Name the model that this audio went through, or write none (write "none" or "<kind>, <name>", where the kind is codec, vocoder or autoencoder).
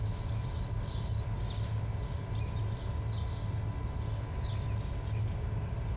none